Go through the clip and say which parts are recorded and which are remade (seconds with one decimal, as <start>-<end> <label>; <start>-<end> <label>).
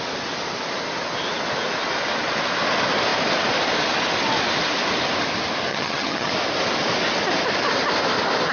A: 0.0-5.7 recorded; 5.7-6.3 remade; 6.3-8.5 recorded